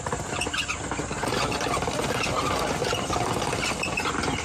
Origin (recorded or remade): recorded